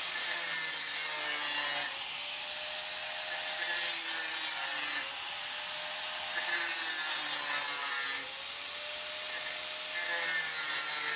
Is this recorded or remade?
recorded